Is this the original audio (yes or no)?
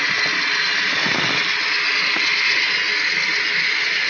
yes